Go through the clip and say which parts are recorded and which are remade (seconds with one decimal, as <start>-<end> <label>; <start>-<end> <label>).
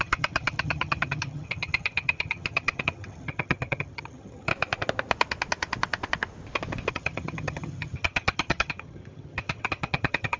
0.0-4.5 remade; 4.5-6.9 recorded; 6.9-10.4 remade